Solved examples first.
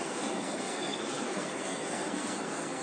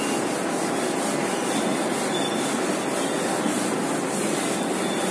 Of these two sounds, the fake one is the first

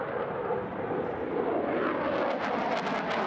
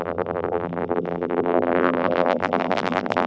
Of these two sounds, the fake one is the second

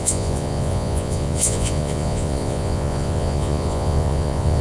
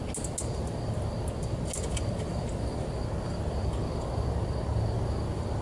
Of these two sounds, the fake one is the first